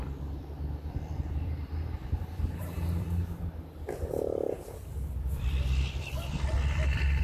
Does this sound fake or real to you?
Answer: fake